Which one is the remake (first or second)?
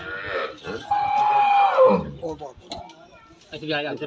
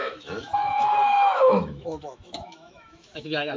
second